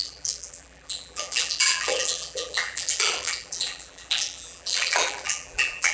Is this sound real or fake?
fake